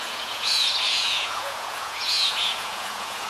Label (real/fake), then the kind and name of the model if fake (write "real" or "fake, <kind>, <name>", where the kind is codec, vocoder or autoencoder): fake, vocoder, Vocos